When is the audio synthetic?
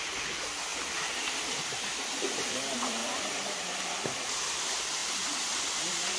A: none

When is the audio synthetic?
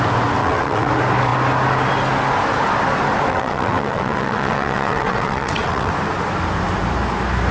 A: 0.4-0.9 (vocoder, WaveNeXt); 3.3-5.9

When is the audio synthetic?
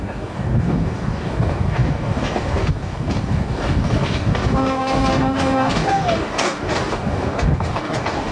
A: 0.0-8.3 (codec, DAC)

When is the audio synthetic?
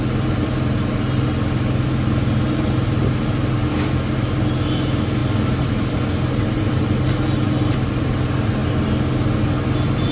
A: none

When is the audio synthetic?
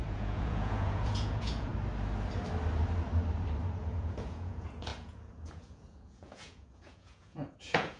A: 0.0-1.7 (vocoder, Vocos); 3.8-8.0